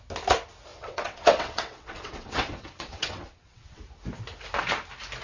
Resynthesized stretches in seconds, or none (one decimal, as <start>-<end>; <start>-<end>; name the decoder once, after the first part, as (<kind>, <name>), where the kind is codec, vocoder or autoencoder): 0.7-3.8 (vocoder, WaveNeXt)